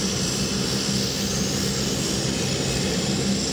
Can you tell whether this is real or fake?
real